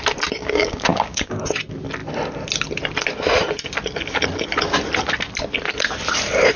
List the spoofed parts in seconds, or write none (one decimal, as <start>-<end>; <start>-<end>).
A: 0.4-1.4